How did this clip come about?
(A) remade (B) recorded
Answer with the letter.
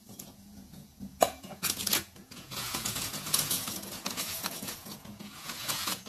A